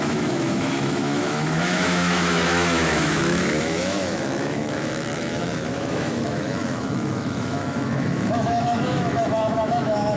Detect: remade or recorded remade